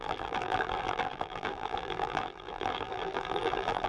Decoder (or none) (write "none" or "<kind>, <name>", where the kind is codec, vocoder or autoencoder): vocoder, BigVGAN v2